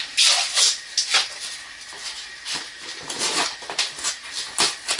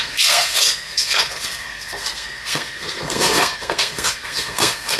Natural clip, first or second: first